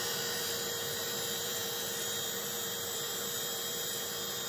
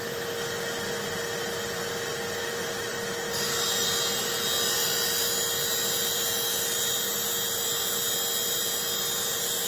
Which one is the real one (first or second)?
second